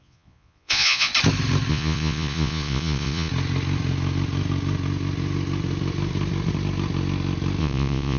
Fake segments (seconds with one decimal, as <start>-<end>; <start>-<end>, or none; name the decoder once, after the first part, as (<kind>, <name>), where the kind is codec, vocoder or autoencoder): 0.0-1.1 (vocoder, Vocos); 1.7-3.3; 7.6-8.2